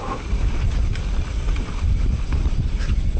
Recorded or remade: recorded